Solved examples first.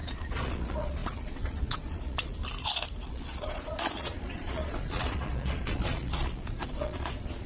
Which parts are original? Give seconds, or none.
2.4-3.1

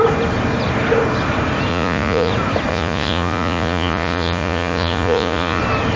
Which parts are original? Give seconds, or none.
0.0-1.7; 2.3-2.7; 5.6-6.0

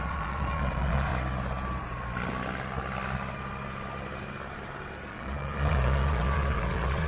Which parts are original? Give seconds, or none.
1.1-5.1

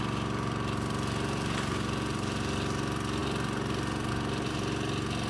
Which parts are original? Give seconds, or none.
0.0-5.3

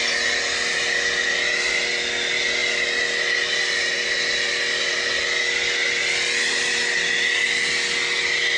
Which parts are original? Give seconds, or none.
0.0-8.6

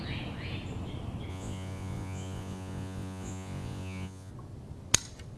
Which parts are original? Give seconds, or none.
0.0-1.3; 4.3-5.4

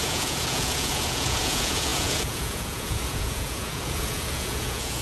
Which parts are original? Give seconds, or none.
none

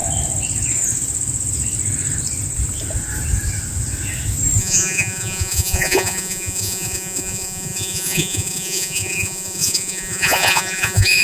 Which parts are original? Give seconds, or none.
0.0-4.6